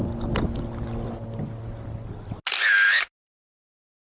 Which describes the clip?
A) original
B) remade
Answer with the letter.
A